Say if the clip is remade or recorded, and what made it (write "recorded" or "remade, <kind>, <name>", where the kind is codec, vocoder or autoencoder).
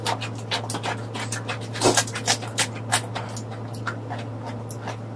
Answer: recorded